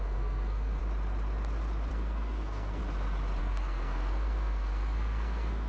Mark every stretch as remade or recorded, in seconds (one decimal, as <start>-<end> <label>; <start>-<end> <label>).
0.0-0.8 remade; 0.8-1.9 recorded; 1.9-2.8 remade; 2.8-3.4 recorded; 3.4-5.7 remade